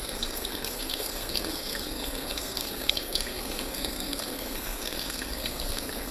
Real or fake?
fake